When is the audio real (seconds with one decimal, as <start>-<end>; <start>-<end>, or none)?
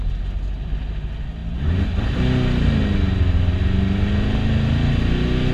0.0-5.5